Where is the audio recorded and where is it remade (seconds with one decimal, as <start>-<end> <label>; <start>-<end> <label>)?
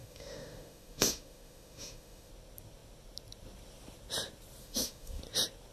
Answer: 0.0-2.3 remade; 2.3-4.6 recorded; 4.6-5.2 remade; 5.2-5.7 recorded